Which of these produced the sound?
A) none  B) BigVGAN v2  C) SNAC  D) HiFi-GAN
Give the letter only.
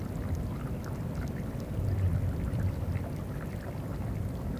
A